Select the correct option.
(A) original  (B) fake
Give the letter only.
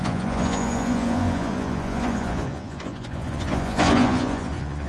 B